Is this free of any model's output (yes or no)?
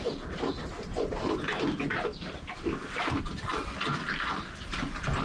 yes